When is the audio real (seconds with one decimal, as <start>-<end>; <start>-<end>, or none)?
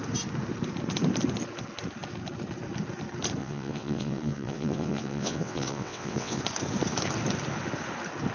0.0-3.4; 6.4-8.3